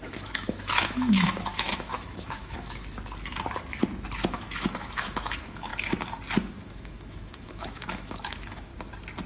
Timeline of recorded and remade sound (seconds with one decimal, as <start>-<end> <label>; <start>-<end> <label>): 0.0-2.8 remade; 2.8-4.3 recorded; 4.3-5.7 remade; 5.7-6.4 recorded; 6.4-8.7 remade; 8.7-9.3 recorded